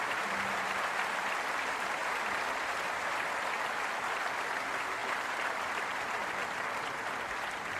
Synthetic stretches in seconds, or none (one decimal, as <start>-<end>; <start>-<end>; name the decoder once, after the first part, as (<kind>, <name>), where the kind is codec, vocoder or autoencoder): none